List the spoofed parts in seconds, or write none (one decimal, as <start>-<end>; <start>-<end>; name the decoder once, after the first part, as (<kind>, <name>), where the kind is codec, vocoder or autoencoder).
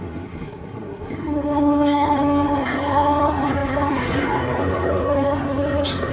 0.0-6.1 (codec, SNAC)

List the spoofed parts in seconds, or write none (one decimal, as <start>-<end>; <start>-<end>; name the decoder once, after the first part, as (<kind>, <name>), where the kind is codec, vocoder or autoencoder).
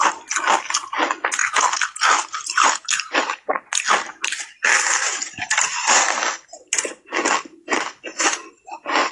none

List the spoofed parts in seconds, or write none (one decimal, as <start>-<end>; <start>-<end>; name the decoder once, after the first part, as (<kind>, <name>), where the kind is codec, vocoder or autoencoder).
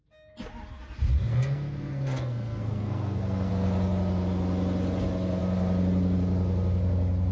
1.3-3.5 (codec, SNAC)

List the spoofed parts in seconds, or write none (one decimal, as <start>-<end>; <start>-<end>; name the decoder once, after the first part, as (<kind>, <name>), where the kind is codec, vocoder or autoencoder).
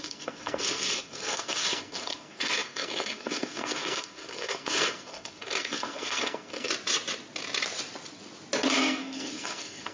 0.0-6.7 (codec, SNAC); 8.8-9.9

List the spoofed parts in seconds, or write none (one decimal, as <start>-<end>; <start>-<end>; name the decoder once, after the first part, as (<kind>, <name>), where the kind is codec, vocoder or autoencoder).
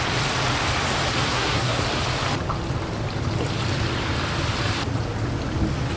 1.3-1.8 (codec, SNAC)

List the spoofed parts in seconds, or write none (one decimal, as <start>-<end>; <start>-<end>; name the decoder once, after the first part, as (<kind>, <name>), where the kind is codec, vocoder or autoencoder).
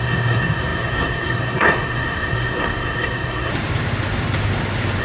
0.0-3.5 (codec, SNAC)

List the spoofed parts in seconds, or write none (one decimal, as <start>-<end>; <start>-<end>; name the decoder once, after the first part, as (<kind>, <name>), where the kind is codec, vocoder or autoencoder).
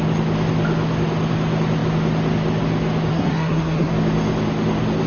3.1-3.9 (codec, SNAC)